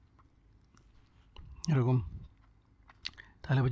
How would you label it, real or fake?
real